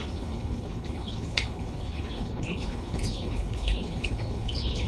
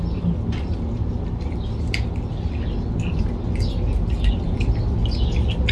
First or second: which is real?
second